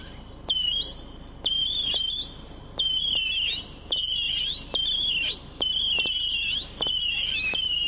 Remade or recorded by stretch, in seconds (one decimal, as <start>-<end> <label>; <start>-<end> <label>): 0.0-7.9 recorded